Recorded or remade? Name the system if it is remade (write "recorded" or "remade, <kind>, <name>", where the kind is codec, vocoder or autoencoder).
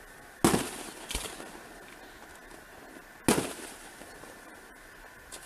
recorded